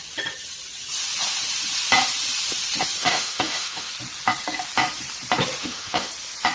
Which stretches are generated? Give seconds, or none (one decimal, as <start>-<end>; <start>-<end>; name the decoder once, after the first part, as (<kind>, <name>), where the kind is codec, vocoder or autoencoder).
3.0-3.9 (autoencoder, DAC-VAE); 5.6-6.1